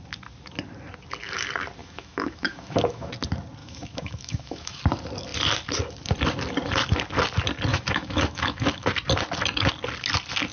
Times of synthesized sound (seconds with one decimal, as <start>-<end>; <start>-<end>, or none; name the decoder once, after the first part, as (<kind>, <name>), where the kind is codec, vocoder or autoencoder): 1.8-3.1 (autoencoder, DAC-VAE); 3.6-4.8; 7.7-8.9